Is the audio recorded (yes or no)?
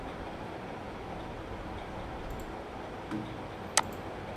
yes